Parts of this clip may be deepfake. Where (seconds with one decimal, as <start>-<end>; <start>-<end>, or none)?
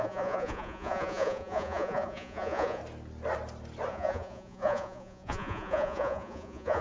0.0-2.8; 3.9-6.8